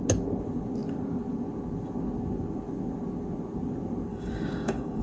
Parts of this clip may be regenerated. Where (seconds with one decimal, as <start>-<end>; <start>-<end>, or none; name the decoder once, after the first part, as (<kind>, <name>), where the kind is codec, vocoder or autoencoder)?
4.1-5.0 (codec, DAC)